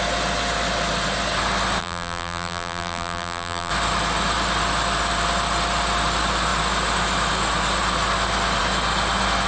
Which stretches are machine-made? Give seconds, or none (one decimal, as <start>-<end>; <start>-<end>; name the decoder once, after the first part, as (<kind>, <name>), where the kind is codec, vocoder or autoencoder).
1.8-3.7 (vocoder, BigVGAN v2)